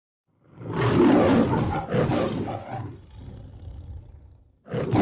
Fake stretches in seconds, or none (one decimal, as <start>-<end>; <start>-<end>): none